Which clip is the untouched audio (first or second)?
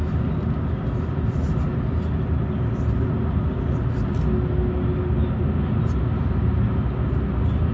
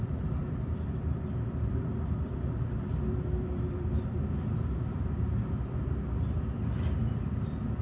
first